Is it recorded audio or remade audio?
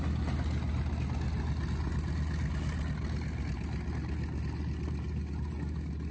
recorded